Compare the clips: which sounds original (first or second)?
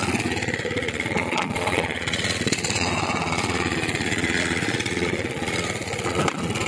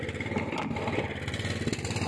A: second